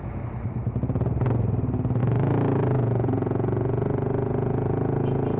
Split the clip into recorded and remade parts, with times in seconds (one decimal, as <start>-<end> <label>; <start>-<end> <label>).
0.0-2.0 recorded; 2.0-5.4 remade

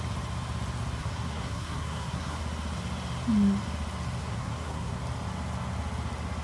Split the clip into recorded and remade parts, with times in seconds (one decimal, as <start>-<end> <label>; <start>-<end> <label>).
0.0-1.0 recorded; 1.0-2.4 remade; 2.4-4.2 recorded; 4.2-5.0 remade; 5.0-6.4 recorded